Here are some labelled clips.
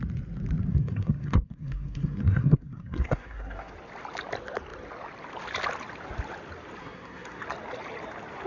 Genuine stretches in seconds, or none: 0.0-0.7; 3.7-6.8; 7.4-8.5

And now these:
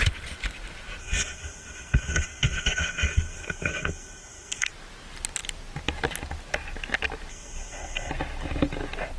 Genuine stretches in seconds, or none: 0.0-1.0; 4.7-7.3; 8.1-9.2

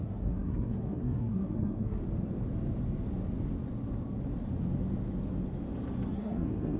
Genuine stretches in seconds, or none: 2.0-6.1

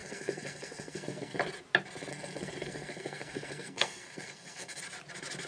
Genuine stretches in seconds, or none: 1.4-2.1; 4.8-5.5

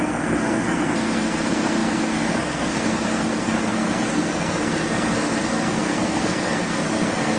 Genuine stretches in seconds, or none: none

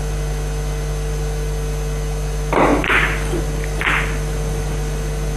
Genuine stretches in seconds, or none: 0.0-5.4

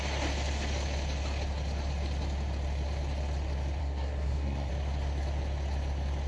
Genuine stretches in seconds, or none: 0.0-3.8; 4.7-6.3

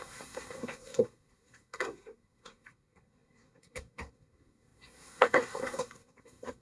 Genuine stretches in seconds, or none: none